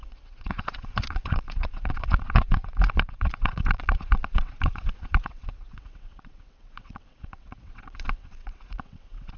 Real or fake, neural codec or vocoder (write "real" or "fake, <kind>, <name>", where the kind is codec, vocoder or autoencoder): fake, vocoder, WaveNeXt